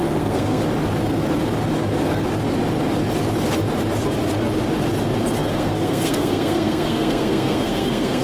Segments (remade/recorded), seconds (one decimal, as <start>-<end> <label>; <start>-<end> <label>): 0.0-0.6 remade; 0.6-5.5 recorded; 5.5-8.2 remade